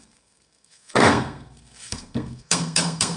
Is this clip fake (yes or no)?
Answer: yes